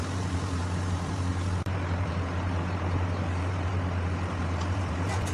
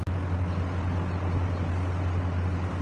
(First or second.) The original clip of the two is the second